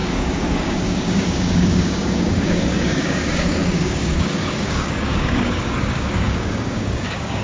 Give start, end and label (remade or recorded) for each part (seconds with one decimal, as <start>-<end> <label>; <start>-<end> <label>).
0.0-7.4 remade